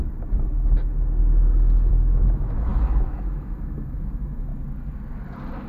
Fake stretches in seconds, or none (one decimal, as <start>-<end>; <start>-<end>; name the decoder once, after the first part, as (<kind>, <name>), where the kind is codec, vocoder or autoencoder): 1.9-4.5 (autoencoder, DAC-VAE)